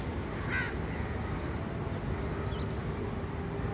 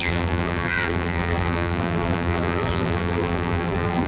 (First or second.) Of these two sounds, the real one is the first